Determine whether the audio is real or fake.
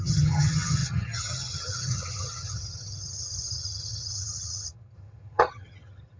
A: fake